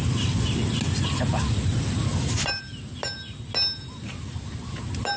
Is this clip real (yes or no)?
yes